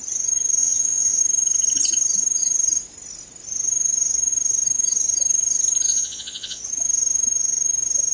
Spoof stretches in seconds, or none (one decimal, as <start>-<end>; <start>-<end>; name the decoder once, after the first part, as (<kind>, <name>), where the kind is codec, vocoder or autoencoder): 0.6-1.2 (vocoder, Vocos); 5.9-6.6